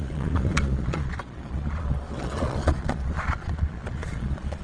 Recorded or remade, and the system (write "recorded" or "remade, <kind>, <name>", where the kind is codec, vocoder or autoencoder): remade, vocoder, Vocos